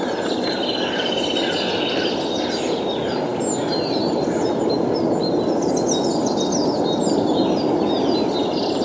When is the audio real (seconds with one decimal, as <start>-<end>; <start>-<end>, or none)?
0.0-8.8